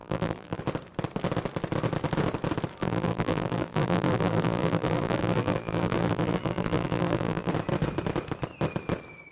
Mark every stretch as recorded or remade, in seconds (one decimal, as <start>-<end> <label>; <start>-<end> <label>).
0.0-0.6 remade; 0.6-2.8 recorded; 2.8-7.5 remade; 7.5-9.3 recorded